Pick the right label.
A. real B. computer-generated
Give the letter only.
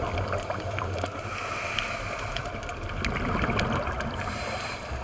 A